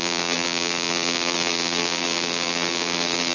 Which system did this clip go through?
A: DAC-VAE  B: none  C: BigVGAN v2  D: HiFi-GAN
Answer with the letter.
C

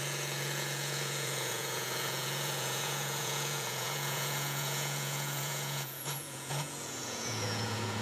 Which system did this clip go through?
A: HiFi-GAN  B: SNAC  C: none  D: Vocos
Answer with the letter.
D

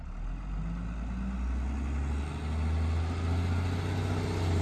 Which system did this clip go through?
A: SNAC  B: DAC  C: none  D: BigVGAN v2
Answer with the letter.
C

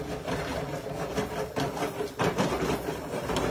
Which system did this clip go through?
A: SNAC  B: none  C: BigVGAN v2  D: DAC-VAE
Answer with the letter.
B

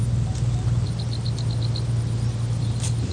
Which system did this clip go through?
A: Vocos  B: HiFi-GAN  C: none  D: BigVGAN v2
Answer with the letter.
C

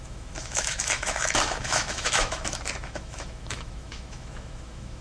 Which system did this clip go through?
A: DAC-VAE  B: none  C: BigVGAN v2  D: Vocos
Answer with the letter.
A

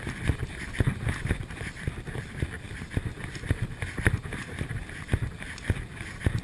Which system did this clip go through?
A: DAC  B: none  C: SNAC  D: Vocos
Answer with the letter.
B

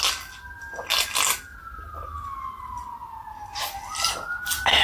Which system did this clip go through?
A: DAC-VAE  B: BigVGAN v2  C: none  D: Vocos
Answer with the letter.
C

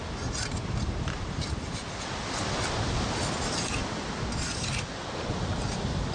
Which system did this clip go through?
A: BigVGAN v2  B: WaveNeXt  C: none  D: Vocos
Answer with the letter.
C